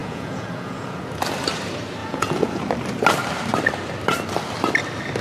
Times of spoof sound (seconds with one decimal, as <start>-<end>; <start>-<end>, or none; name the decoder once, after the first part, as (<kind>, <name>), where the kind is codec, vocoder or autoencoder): 0.0-1.0 (vocoder, Vocos); 2.0-2.6